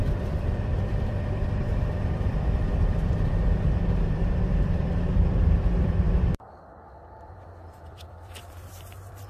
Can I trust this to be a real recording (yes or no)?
no